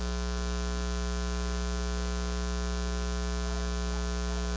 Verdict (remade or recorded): recorded